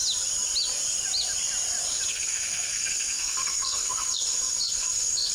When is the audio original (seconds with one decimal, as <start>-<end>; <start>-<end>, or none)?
0.0-2.1